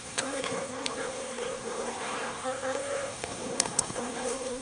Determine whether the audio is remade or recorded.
remade